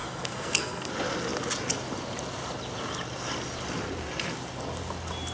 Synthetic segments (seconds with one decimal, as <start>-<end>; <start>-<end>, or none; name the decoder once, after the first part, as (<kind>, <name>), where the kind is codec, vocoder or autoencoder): 0.0-0.9 (codec, SNAC)